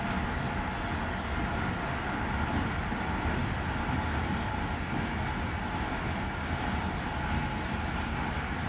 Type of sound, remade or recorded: recorded